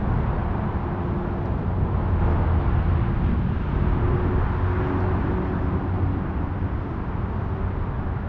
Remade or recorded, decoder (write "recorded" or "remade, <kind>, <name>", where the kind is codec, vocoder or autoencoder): recorded